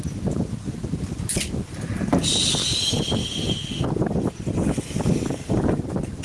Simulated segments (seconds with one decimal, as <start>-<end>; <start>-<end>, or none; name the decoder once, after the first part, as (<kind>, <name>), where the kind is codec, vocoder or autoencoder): 0.0-2.6 (vocoder, BigVGAN v2); 4.8-5.4